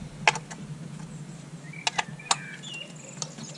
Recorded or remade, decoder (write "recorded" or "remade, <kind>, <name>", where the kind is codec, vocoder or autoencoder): recorded